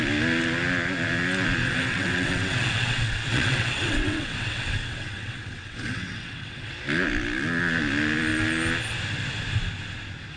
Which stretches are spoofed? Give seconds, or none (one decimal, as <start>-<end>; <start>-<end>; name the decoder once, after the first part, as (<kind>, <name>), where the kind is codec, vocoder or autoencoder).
1.6-6.7 (vocoder, WaveNeXt)